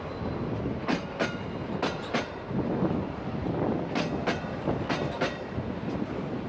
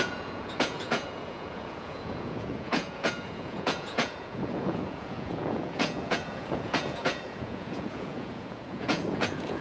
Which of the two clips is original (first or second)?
first